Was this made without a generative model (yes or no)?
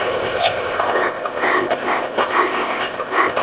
no